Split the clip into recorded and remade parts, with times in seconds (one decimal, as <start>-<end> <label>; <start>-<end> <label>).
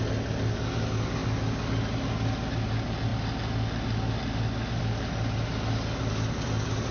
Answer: 0.0-6.9 recorded